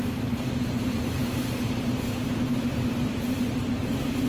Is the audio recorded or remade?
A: remade